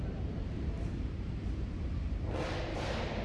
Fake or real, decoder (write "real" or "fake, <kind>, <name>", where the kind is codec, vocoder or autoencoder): fake, vocoder, BigVGAN v2